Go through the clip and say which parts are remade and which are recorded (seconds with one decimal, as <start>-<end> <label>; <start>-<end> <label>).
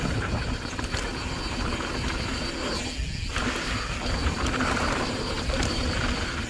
0.0-4.2 recorded; 4.2-5.9 remade; 5.9-6.5 recorded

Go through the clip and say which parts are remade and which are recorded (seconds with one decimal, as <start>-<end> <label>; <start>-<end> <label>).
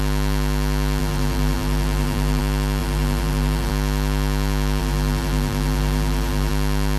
0.0-1.0 recorded; 1.0-2.4 remade; 2.4-2.8 recorded; 2.8-3.7 remade; 3.7-4.8 recorded; 4.8-6.5 remade; 6.5-7.0 recorded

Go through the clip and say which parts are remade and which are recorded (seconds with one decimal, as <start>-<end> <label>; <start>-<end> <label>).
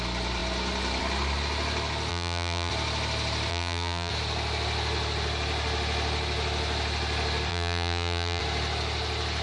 0.0-2.1 recorded; 2.1-2.7 remade; 2.7-3.5 recorded; 3.5-4.1 remade; 4.1-7.5 recorded; 7.5-8.4 remade; 8.4-9.4 recorded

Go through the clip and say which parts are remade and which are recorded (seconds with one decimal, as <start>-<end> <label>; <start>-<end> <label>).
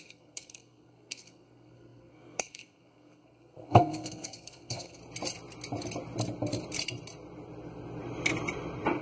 0.0-5.0 remade; 5.0-9.0 recorded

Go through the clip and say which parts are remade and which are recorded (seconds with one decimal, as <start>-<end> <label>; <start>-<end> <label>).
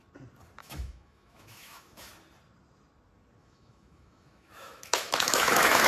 0.0-0.6 recorded; 0.6-2.1 remade; 2.1-3.4 recorded; 3.4-5.9 remade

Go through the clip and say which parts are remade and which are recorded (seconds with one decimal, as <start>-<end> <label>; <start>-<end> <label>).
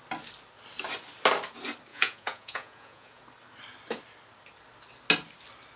0.0-1.9 recorded; 1.9-3.2 remade; 3.2-5.8 recorded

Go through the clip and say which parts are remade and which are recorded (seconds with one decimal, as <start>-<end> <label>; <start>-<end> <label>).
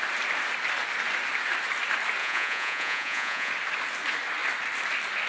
0.0-2.2 recorded; 2.2-3.5 remade; 3.5-5.3 recorded